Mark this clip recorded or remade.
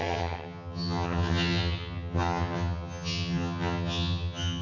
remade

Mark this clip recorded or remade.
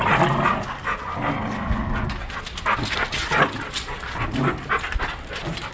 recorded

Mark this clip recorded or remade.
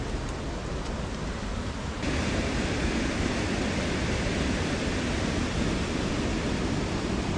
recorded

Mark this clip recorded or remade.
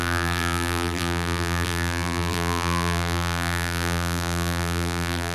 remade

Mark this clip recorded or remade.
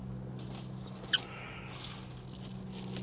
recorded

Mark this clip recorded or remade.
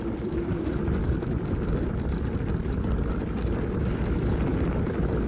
remade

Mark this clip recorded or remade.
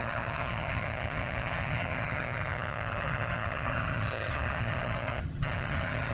remade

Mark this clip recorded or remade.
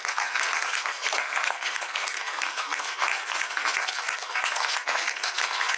remade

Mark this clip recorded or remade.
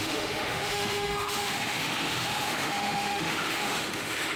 remade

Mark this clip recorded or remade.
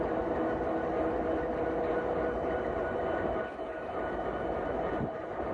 remade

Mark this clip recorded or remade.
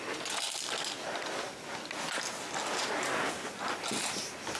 recorded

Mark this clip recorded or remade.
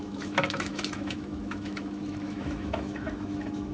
remade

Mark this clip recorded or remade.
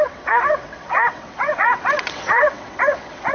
remade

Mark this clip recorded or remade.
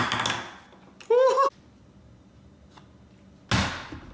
recorded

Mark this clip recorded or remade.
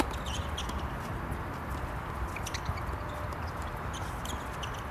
remade